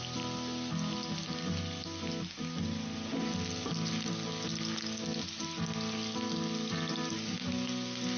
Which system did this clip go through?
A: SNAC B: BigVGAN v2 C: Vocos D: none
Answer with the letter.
D